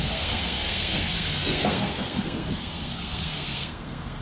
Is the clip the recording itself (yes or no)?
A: no